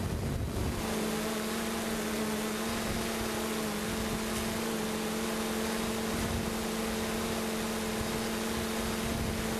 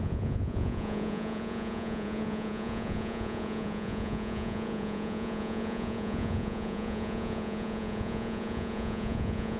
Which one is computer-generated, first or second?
second